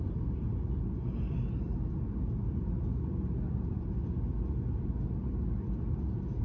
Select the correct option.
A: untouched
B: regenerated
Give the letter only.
A